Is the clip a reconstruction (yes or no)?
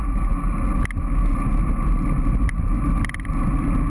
no